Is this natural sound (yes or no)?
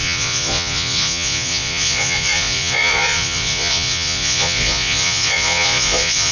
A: no